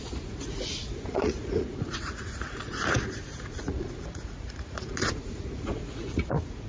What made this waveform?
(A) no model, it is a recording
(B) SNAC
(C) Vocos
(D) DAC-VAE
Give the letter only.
C